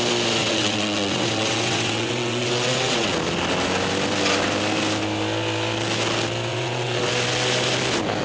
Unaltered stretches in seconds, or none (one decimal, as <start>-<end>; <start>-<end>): 0.0-0.4; 3.1-6.5; 7.1-8.2